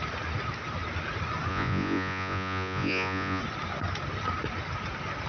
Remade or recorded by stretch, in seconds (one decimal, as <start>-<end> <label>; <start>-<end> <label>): 0.0-1.5 recorded; 1.5-3.4 remade; 3.4-5.3 recorded